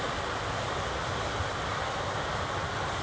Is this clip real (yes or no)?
yes